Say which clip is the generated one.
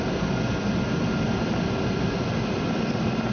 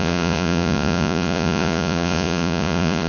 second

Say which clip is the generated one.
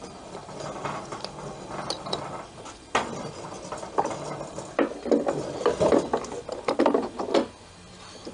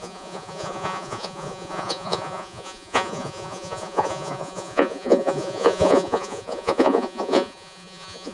second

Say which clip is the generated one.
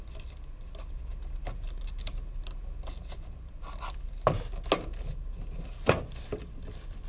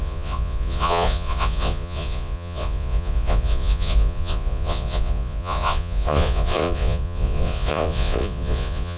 second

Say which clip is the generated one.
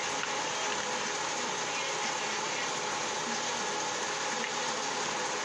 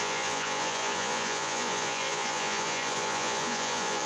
second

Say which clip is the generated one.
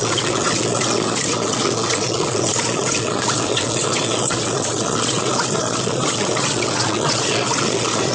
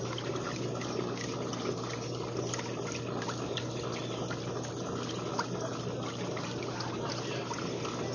first